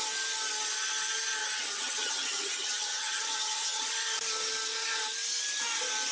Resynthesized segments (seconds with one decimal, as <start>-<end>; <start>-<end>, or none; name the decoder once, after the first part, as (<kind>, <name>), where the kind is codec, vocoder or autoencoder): 1.4-3.9 (vocoder, HiFi-GAN)